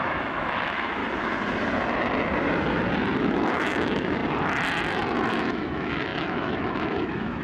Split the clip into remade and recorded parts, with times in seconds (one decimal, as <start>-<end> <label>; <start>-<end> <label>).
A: 0.0-1.0 remade; 1.0-3.2 recorded; 3.2-4.2 remade; 4.2-5.3 recorded; 5.3-7.4 remade